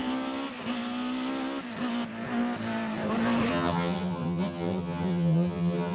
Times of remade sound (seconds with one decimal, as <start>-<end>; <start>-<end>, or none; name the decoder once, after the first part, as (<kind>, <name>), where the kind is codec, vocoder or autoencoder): 3.5-5.9 (vocoder, HiFi-GAN)